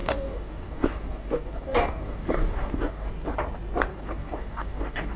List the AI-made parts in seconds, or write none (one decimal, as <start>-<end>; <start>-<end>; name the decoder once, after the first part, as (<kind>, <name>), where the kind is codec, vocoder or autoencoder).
0.0-3.1 (codec, DAC); 3.9-5.2